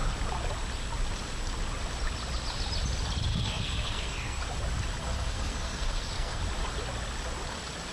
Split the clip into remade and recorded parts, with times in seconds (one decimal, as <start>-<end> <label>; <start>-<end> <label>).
0.0-3.3 recorded; 3.3-4.4 remade; 4.4-5.0 recorded; 5.0-6.4 remade; 6.4-7.9 recorded